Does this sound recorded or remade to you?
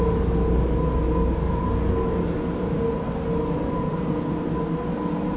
recorded